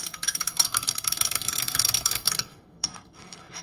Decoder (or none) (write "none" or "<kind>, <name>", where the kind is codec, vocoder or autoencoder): codec, SNAC